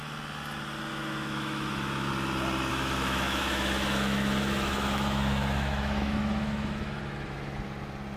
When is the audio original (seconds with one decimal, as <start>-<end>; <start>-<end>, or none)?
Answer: 0.0-0.9; 2.1-2.7; 7.0-8.2